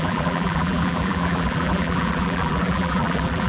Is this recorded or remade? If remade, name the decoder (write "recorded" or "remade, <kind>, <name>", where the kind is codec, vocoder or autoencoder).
remade, vocoder, BigVGAN v2